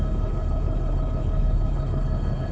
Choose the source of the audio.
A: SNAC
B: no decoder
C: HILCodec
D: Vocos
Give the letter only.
C